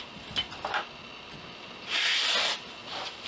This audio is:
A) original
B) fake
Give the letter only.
A